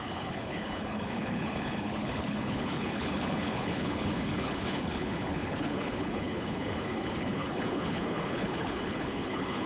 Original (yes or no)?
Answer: no